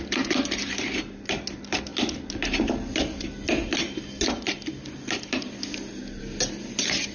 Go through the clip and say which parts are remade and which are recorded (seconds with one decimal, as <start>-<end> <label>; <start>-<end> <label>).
0.0-7.1 recorded